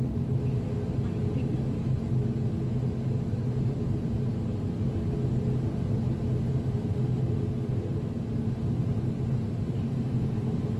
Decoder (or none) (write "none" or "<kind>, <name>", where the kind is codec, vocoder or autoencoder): none